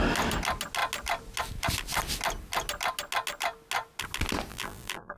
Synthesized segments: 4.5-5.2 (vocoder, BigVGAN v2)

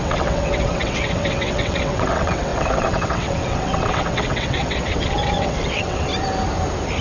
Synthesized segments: 0.0-6.1 (vocoder, WaveNeXt)

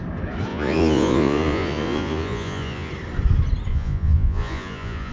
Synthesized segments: 0.5-2.9 (vocoder, Vocos); 3.7-5.1

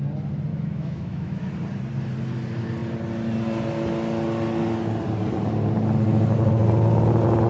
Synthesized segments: 0.5-1.4 (autoencoder, DAC-VAE)

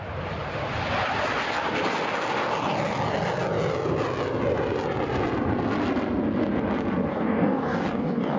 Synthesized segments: 7.1-8.4 (codec, DAC)